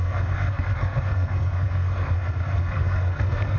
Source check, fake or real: fake